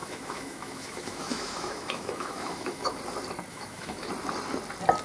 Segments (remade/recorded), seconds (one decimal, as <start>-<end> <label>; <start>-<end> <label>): 0.0-3.0 remade; 3.0-3.5 recorded; 3.5-4.1 remade; 4.1-5.0 recorded